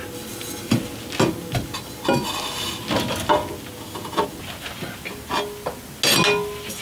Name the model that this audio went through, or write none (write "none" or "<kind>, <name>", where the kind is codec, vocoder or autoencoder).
none